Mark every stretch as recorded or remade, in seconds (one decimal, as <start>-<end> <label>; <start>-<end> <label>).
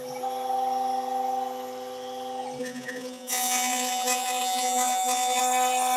0.0-2.6 recorded; 2.6-5.4 remade; 5.4-6.0 recorded